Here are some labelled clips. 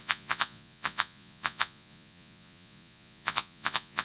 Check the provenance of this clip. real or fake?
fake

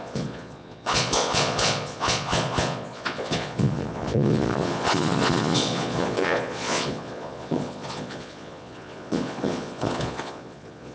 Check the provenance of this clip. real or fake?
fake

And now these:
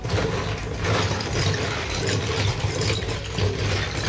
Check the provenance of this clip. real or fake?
real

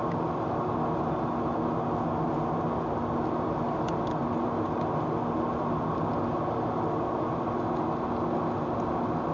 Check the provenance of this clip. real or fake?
real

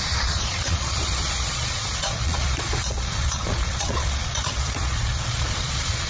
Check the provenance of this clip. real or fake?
fake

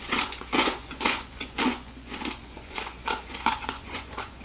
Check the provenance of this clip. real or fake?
fake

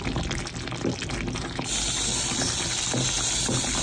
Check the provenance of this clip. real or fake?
real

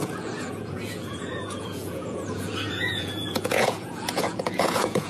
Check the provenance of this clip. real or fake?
fake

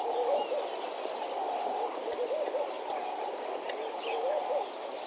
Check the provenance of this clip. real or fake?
real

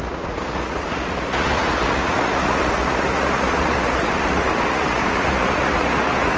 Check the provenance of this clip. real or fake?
fake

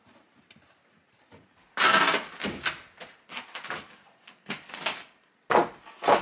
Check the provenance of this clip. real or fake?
real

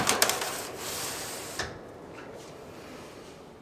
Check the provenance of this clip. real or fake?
real